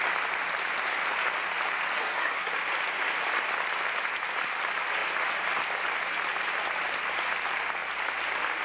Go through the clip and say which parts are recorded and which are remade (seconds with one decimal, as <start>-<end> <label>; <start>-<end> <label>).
0.0-2.0 recorded; 2.0-2.5 remade; 2.5-8.6 recorded